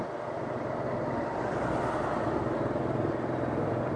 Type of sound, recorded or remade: recorded